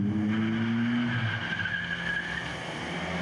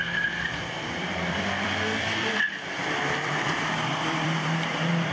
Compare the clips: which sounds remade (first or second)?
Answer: second